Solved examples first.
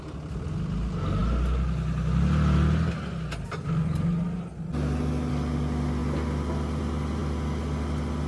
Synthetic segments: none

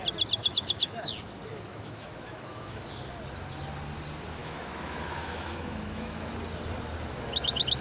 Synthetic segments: 0.4-1.1 (autoencoder, DAC-VAE); 1.5-2.8; 4.4-6.3

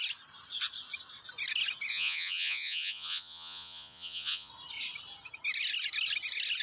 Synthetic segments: 1.9-4.5 (vocoder, Vocos)

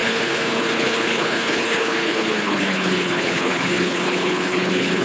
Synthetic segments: 0.0-5.0 (codec, HILCodec)

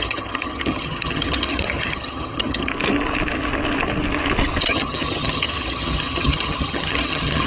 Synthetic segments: 0.0-2.7 (vocoder, HiFi-GAN); 4.6-7.5

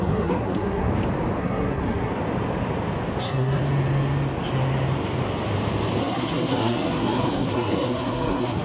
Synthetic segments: 0.0-0.9 (codec, SNAC); 1.4-2.1; 3.2-3.6; 6.0-8.6

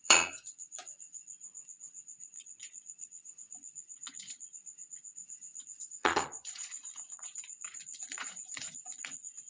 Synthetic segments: 0.0-1.2 (vocoder, Vocos); 1.7-9.5